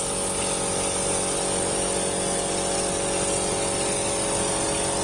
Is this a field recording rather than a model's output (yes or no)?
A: yes